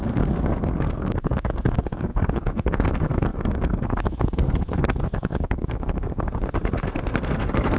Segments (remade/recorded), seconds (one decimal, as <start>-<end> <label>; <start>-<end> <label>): 0.0-7.8 remade